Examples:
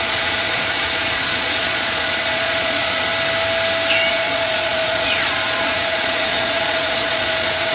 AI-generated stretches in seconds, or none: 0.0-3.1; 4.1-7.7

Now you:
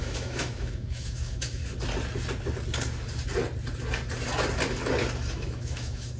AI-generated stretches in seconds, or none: 0.0-1.6; 5.3-6.2

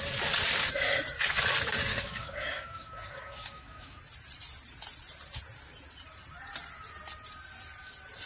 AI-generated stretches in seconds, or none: 1.9-4.0

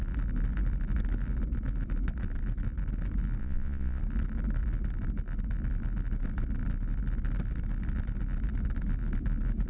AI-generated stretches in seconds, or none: 3.4-4.0

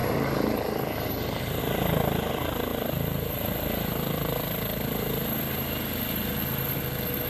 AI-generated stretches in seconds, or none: 2.7-5.2

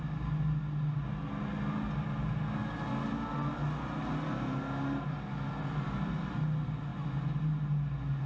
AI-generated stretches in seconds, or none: none

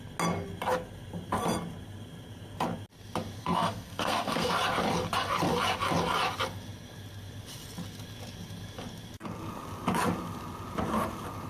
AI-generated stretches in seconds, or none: 3.4-4.5